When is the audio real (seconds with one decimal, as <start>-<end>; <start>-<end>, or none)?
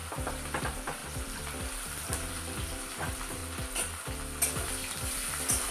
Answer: 0.0-0.6; 3.4-5.0